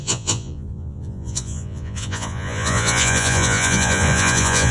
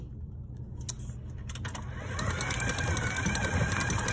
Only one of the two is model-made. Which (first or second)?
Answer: first